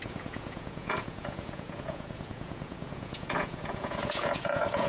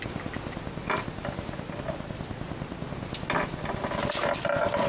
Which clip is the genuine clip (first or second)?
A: second